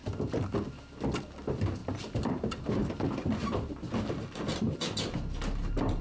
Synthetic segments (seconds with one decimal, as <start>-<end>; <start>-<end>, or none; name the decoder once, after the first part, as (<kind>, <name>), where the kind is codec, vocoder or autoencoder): 1.8-4.8 (vocoder, BigVGAN v2)